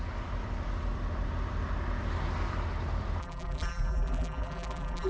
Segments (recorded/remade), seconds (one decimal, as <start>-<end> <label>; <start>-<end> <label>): 0.0-3.2 recorded; 3.2-5.1 remade